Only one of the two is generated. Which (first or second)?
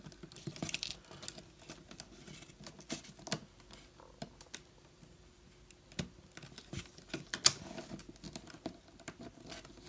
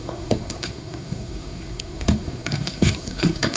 second